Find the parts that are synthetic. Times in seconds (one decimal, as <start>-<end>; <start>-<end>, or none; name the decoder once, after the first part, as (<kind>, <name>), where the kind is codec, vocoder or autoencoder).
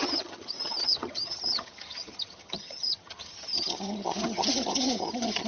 0.0-5.5 (vocoder, HiFi-GAN)